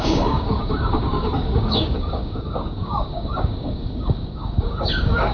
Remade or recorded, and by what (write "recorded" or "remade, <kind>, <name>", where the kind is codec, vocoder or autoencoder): remade, codec, DAC